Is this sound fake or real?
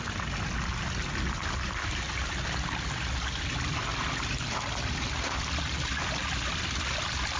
real